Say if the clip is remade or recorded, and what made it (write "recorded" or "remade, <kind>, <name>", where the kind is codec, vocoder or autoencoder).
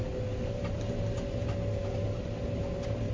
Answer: recorded